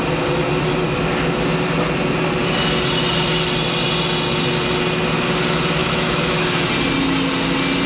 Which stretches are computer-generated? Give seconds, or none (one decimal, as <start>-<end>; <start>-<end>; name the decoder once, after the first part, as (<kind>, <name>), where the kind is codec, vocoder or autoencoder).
5.8-6.7 (autoencoder, DAC-VAE)